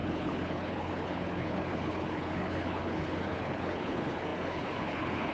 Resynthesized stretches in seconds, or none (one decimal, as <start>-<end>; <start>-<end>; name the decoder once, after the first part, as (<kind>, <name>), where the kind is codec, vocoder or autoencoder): 0.0-5.3 (codec, HILCodec)